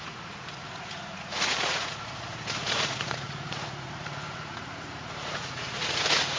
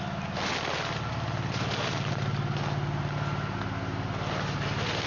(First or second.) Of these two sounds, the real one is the second